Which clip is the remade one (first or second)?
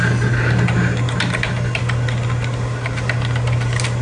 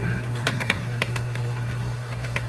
second